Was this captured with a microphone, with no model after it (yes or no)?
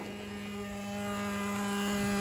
yes